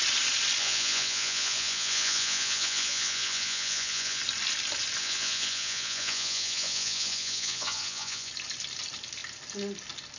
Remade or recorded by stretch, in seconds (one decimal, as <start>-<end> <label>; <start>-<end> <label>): 0.0-0.6 recorded; 0.6-4.2 remade; 4.2-5.0 recorded; 5.0-8.3 remade; 8.3-10.2 recorded